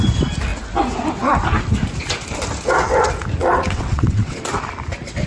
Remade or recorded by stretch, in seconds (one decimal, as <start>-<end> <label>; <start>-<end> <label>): 0.0-3.4 recorded; 3.4-4.4 remade; 4.4-5.3 recorded